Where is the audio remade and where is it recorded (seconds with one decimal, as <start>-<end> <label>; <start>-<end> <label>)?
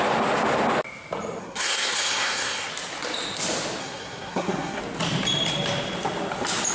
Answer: 0.0-1.4 recorded; 1.4-2.7 remade; 2.7-3.8 recorded; 3.8-4.8 remade; 4.8-6.7 recorded